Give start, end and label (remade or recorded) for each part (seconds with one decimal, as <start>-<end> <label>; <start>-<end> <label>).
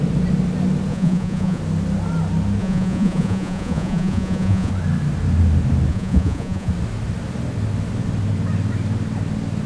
0.0-0.9 recorded; 0.9-1.6 remade; 1.6-2.6 recorded; 2.6-4.7 remade; 4.7-5.9 recorded; 5.9-6.7 remade; 6.7-9.7 recorded